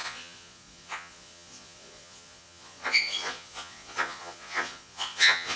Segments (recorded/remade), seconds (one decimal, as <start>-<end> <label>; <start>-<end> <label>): 0.0-5.6 remade